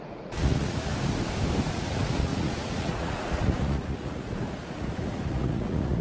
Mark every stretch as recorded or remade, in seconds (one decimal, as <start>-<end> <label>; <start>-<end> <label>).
0.0-0.9 remade; 0.9-1.7 recorded; 1.7-6.0 remade